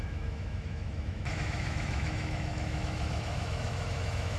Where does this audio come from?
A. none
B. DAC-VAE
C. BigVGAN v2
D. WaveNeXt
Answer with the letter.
B